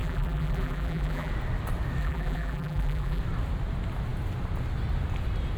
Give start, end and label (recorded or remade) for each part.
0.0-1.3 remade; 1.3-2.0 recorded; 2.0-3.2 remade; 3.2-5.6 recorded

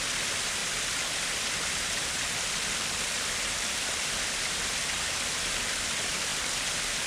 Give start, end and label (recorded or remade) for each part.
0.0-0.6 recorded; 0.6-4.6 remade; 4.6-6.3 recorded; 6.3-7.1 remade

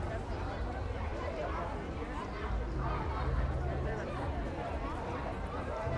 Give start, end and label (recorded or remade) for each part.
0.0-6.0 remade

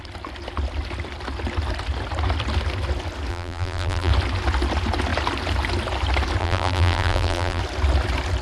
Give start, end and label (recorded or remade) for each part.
0.0-3.3 recorded; 3.3-4.1 remade; 4.1-6.4 recorded; 6.4-7.6 remade; 7.6-8.4 recorded

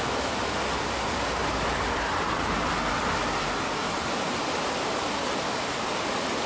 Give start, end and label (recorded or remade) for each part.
0.0-6.5 recorded

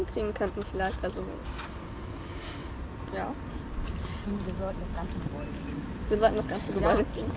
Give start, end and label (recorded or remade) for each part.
0.0-2.6 recorded; 2.6-3.9 remade; 3.9-7.4 recorded

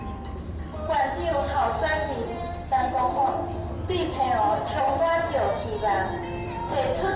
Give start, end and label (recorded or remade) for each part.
0.0-7.2 remade

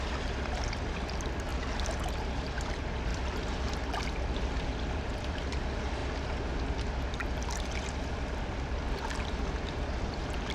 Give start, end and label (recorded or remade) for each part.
0.0-1.5 remade; 1.5-2.4 recorded; 2.4-6.0 remade; 6.0-8.0 recorded; 8.0-10.5 remade